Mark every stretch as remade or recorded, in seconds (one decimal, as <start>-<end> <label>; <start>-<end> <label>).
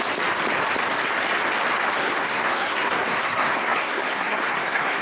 0.0-2.0 recorded; 2.0-5.0 remade